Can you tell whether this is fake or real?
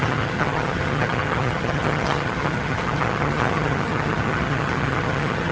fake